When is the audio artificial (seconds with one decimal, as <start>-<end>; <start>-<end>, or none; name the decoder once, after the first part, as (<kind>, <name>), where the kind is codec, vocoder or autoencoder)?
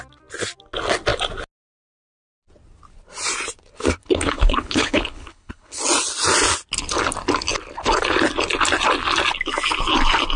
4.0-5.8 (codec, HILCodec)